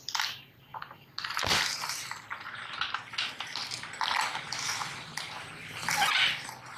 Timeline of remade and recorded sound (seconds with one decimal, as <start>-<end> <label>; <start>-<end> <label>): 0.0-6.8 recorded